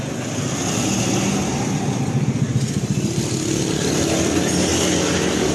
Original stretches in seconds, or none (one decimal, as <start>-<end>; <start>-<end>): 0.0-5.5

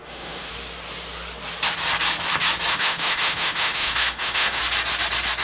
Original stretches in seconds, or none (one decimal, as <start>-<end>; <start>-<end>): 0.5-2.7; 4.6-5.4

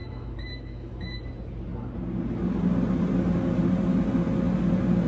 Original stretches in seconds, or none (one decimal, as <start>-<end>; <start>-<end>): 1.2-5.1

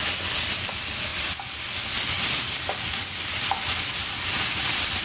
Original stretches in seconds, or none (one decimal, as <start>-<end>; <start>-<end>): 0.0-5.0

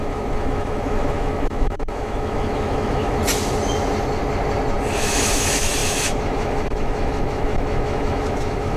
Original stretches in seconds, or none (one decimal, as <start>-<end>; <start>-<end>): 3.2-5.0